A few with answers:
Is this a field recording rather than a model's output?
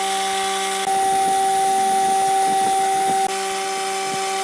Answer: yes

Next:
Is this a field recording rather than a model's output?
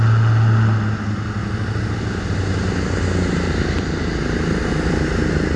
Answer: yes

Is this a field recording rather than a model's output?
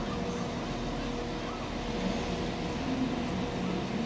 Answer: yes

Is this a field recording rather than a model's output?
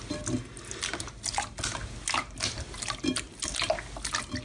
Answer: yes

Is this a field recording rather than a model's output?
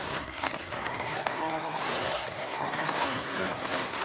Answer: no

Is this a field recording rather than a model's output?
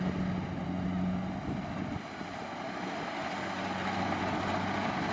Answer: yes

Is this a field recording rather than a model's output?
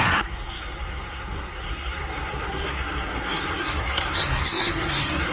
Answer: no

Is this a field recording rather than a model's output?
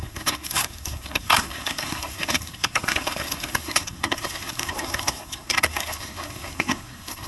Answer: no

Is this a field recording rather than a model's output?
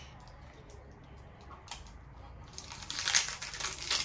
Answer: yes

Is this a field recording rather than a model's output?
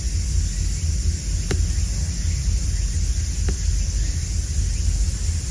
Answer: yes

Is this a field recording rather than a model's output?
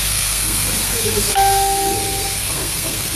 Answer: no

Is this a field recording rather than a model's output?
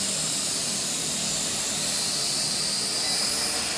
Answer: yes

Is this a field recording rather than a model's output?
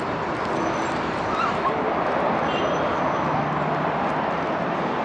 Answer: yes